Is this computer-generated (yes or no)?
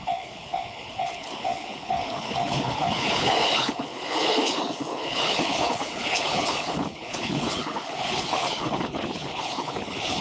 yes